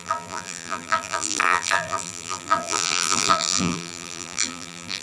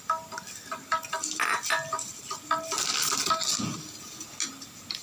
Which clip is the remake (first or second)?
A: first